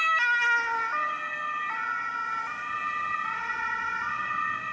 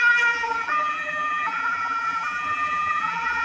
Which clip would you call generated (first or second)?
second